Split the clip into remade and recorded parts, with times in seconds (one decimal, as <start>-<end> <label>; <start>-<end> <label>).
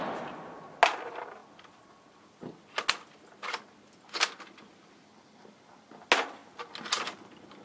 0.0-7.6 recorded